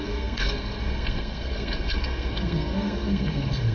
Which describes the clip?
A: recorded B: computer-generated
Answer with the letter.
B